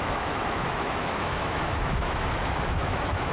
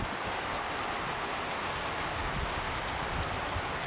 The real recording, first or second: second